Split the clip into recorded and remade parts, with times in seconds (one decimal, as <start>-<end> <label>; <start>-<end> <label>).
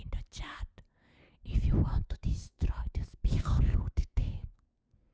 0.0-1.9 recorded; 1.9-5.1 remade